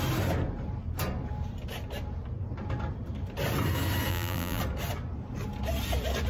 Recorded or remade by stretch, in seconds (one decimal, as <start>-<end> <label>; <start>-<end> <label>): 0.0-4.1 recorded; 4.1-4.6 remade; 4.6-6.3 recorded

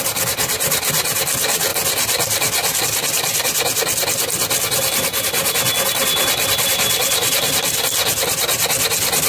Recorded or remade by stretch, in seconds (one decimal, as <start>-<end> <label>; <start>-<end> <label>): 0.0-9.3 recorded

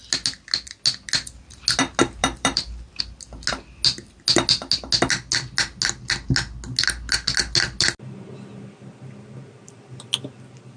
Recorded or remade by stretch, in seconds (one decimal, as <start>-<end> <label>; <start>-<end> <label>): 0.0-2.2 recorded; 2.2-3.0 remade; 3.0-10.8 recorded

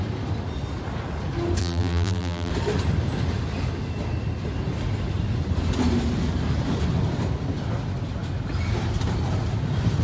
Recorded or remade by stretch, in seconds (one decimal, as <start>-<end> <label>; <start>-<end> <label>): 0.0-1.6 recorded; 1.6-2.5 remade; 2.5-10.0 recorded

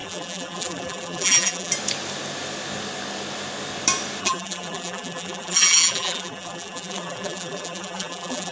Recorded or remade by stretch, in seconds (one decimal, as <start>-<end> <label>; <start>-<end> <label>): 0.0-1.7 remade; 1.7-4.2 recorded; 4.2-8.5 remade

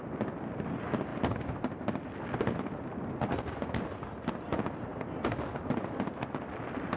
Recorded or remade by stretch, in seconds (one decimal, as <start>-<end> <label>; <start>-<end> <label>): 0.0-4.9 recorded; 4.9-5.5 remade; 5.5-7.0 recorded

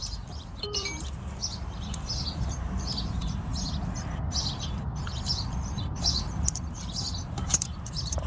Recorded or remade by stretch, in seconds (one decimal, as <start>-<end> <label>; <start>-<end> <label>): 0.0-3.5 remade; 3.5-6.0 recorded; 6.0-8.3 remade

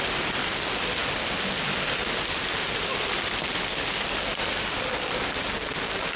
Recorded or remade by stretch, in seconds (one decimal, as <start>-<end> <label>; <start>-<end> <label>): 0.0-6.2 recorded